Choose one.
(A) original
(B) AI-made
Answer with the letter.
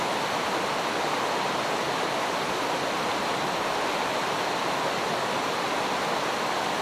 A